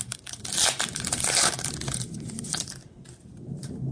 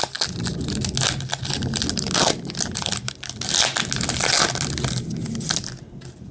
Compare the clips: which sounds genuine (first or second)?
second